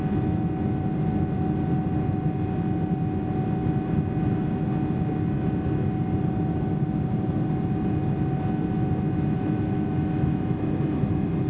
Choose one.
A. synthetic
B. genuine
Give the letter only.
B